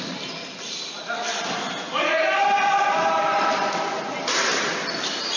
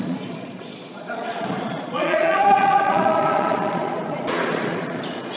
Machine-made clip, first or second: second